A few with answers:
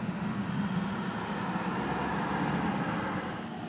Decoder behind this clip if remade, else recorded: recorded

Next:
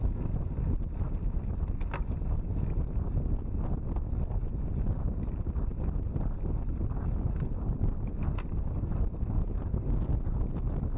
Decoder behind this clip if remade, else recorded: recorded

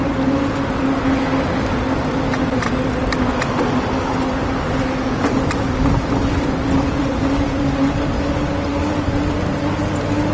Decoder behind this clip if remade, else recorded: recorded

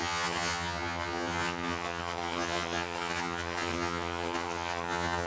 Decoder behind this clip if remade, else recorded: remade, vocoder, HiFi-GAN